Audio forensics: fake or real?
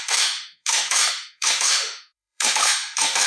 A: fake